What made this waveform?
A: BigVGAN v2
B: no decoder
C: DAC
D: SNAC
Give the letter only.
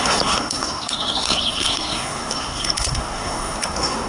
D